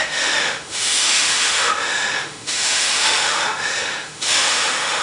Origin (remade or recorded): remade